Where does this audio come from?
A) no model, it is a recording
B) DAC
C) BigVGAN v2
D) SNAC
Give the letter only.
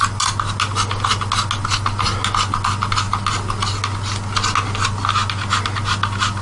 A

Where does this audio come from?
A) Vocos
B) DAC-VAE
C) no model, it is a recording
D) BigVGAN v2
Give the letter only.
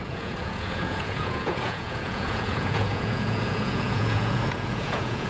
A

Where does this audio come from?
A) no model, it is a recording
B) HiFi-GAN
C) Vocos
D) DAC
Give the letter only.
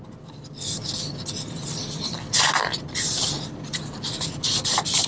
A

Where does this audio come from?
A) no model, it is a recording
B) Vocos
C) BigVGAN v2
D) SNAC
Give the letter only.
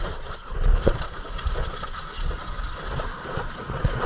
B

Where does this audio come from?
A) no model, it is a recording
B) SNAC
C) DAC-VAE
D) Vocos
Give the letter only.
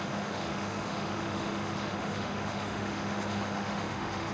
C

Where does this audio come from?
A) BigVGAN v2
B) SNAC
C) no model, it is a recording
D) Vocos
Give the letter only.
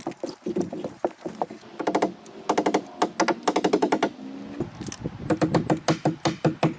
C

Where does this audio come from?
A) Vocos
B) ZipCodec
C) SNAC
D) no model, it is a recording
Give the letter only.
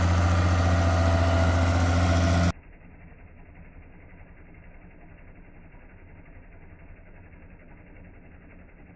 D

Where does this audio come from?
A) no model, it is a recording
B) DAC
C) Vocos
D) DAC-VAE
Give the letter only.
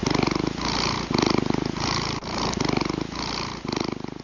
A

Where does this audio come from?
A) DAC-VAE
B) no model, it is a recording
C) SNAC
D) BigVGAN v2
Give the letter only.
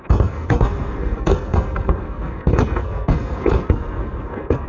C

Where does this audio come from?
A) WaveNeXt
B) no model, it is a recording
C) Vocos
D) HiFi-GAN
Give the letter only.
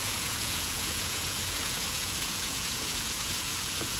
C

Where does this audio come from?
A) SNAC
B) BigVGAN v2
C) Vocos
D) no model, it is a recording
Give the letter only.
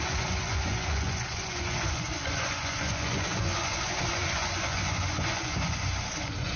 C